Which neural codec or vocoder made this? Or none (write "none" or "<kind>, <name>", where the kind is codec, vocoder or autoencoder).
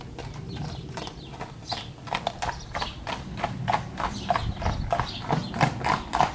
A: none